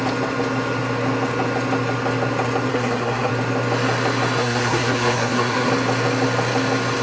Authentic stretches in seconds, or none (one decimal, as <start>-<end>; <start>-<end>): 0.0-2.7; 3.3-4.4; 5.7-7.0